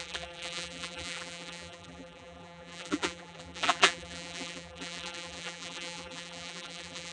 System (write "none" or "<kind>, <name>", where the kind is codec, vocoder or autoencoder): vocoder, BigVGAN v2